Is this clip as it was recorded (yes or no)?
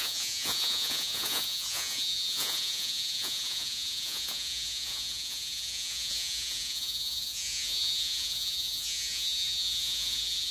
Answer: no